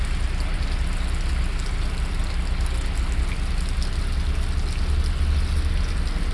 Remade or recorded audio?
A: recorded